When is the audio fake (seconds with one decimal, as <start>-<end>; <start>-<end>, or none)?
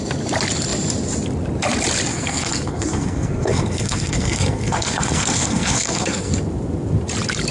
2.1-6.3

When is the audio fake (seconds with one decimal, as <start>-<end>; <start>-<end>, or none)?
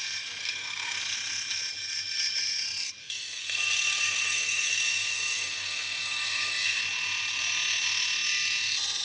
0.4-1.0; 3.0-6.8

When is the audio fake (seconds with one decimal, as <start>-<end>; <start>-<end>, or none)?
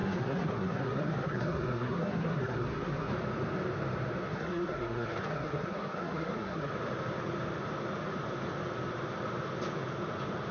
0.0-3.1; 4.3-6.7